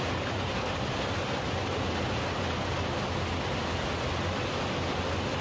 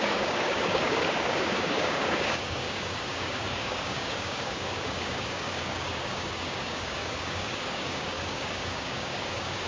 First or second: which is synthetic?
second